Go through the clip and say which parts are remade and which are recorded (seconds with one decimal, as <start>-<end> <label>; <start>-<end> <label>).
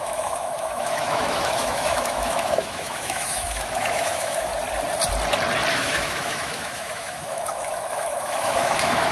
0.0-4.5 remade; 4.5-5.7 recorded; 5.7-9.1 remade